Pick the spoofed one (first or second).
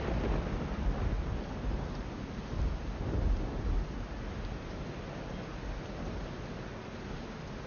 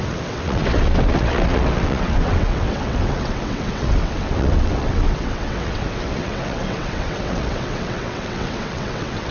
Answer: second